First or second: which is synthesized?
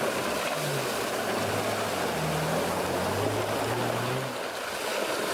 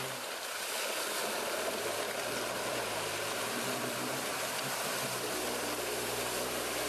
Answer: second